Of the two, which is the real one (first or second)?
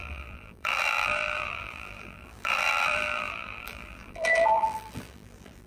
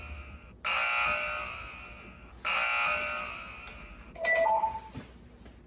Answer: second